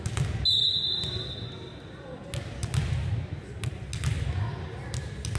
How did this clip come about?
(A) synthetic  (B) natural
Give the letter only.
B